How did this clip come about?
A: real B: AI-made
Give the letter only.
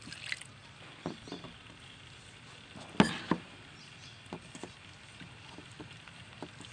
A